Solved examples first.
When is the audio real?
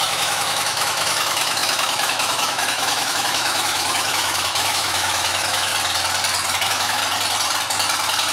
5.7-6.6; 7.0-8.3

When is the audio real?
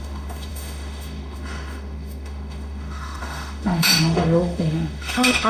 none